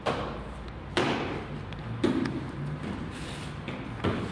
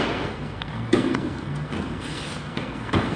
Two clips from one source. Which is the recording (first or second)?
first